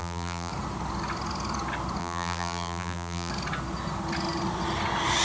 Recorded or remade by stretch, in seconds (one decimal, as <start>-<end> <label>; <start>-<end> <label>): 0.0-0.5 remade; 0.5-2.0 recorded; 2.0-3.3 remade; 3.3-5.2 recorded